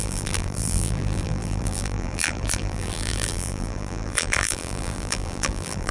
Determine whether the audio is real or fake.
fake